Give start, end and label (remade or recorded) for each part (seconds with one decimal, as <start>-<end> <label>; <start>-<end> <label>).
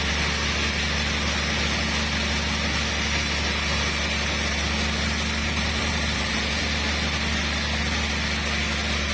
0.0-5.4 recorded; 5.4-6.6 remade; 6.6-9.1 recorded